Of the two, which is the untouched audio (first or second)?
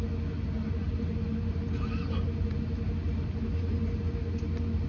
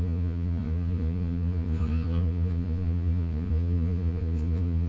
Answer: first